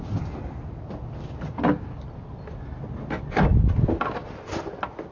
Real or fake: real